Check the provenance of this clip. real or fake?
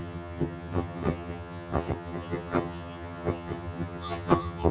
fake